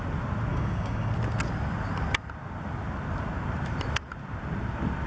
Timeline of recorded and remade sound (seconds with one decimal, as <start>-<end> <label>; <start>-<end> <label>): 0.0-0.5 recorded; 0.5-1.1 remade; 1.1-5.1 recorded